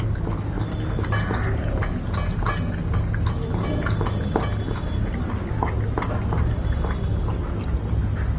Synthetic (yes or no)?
no